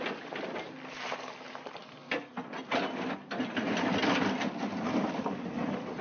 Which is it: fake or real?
real